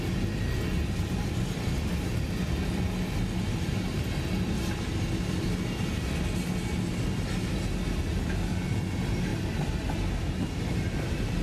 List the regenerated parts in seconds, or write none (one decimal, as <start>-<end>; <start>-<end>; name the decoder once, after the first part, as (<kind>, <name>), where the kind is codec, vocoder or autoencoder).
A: none